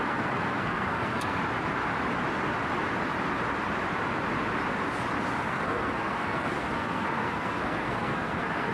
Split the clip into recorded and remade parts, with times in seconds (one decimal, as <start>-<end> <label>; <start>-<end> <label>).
0.0-1.4 remade; 1.4-5.4 recorded; 5.4-8.7 remade